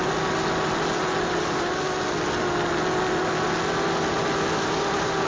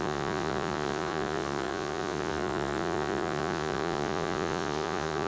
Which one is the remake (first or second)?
second